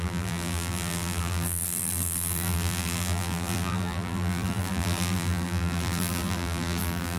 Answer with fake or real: fake